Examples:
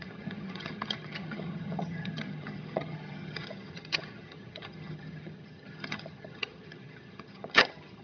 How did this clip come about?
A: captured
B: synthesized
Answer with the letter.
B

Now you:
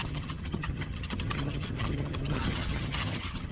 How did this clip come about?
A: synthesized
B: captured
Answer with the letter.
A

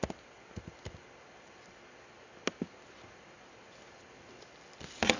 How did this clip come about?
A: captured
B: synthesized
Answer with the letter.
A